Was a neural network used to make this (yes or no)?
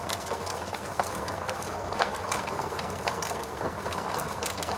yes